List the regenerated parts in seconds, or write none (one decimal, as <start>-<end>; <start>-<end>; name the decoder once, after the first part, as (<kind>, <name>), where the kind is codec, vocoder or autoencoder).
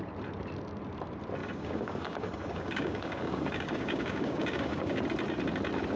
1.4-5.0 (codec, DAC)